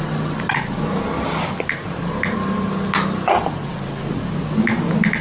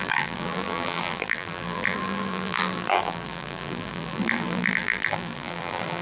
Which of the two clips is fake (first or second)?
second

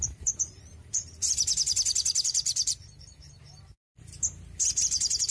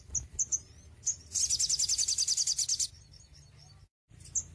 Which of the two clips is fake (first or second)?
first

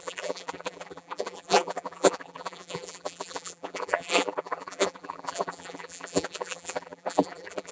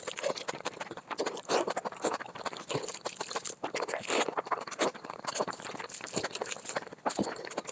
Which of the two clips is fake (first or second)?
first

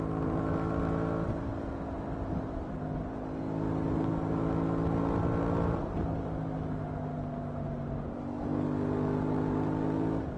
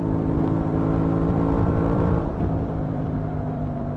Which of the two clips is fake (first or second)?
second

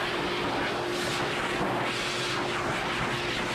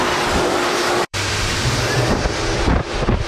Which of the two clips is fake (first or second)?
second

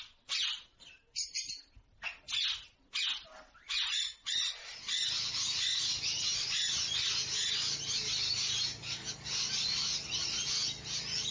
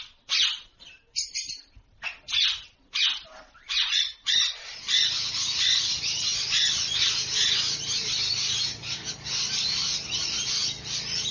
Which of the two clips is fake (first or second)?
second